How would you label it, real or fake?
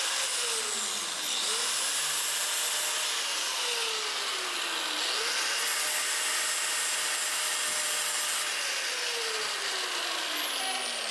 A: real